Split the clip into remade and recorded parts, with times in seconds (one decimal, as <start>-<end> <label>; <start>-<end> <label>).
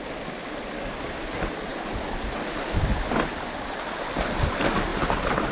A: 0.0-5.5 recorded